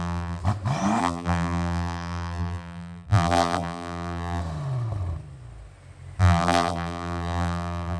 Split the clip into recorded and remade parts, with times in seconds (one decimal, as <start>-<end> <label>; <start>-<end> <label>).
0.0-0.4 remade; 0.4-1.0 recorded; 1.0-4.4 remade; 4.4-6.2 recorded; 6.2-8.0 remade